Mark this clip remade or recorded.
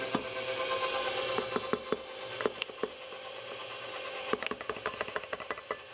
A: recorded